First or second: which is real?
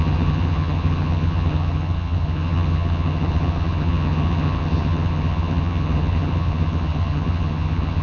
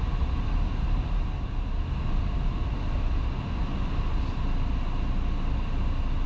second